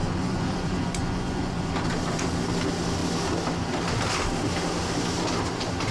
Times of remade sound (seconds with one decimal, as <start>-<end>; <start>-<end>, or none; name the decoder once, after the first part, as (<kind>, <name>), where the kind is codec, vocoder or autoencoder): 0.0-1.7 (vocoder, Vocos)